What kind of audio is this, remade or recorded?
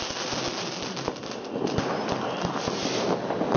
recorded